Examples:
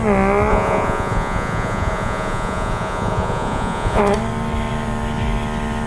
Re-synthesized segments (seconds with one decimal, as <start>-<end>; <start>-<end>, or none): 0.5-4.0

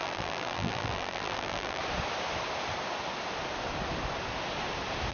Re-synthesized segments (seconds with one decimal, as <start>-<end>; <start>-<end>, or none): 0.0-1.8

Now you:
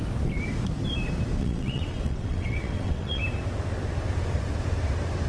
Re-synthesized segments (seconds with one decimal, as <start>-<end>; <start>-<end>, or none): 1.4-3.2

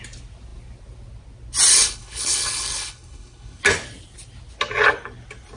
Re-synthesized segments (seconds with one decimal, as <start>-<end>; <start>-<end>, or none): 1.7-3.6

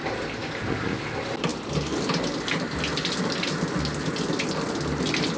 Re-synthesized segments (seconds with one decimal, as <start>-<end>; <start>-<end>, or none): none

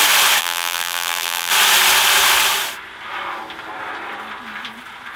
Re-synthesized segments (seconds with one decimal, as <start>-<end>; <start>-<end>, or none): 0.4-1.5

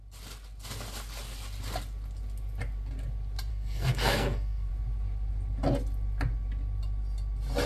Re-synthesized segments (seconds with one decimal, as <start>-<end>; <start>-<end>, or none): 3.5-4.7